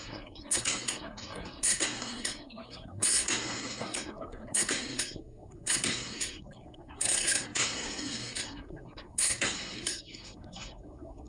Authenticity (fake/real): fake